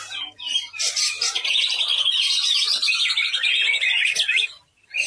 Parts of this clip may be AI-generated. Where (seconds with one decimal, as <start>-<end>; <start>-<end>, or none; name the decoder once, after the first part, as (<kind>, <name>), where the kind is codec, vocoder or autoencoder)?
0.0-1.9 (vocoder, BigVGAN v2)